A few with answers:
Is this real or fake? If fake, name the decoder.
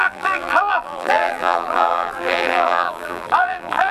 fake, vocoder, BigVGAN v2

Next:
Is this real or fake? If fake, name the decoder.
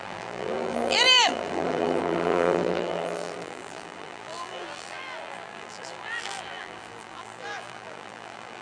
fake, vocoder, BigVGAN v2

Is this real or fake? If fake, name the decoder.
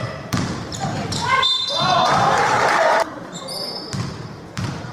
fake, vocoder, BigVGAN v2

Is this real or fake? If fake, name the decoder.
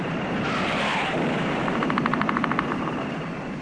fake, vocoder, BigVGAN v2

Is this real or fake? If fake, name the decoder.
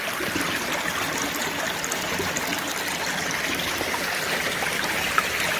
real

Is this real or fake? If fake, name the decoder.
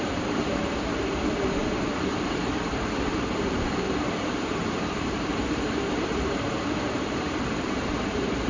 fake, vocoder, BigVGAN v2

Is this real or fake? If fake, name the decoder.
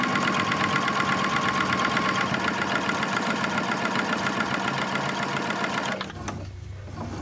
real